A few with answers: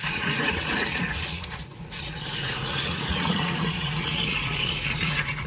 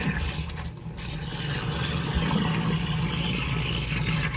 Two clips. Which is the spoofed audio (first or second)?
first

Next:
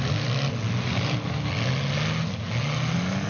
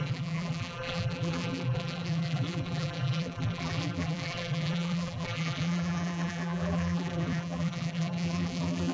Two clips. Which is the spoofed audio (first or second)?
second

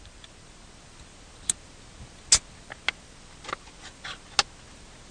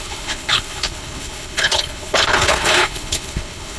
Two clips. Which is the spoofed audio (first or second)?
second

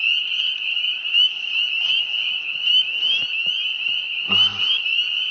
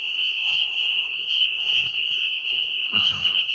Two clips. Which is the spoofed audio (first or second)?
second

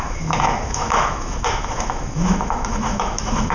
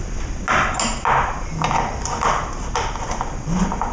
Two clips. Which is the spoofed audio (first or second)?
first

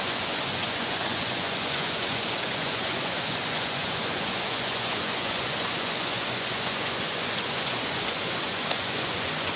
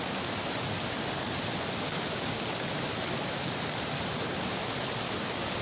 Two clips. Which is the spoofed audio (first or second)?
first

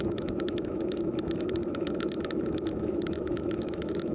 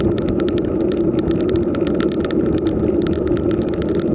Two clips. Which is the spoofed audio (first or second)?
first